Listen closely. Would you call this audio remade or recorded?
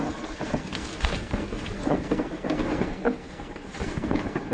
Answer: remade